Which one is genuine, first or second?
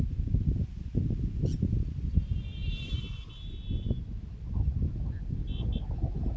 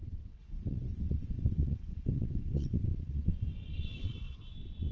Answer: first